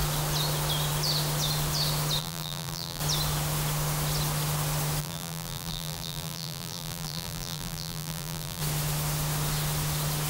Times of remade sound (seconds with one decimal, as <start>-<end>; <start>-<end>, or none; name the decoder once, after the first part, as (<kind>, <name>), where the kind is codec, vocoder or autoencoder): 2.2-3.0 (vocoder, BigVGAN v2); 5.0-8.6